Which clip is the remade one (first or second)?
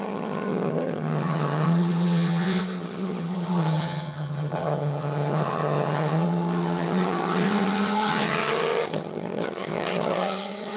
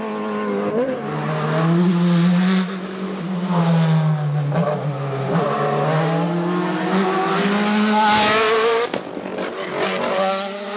first